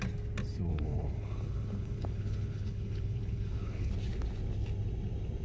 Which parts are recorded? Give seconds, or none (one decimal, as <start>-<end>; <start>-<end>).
0.0-0.7; 3.9-5.4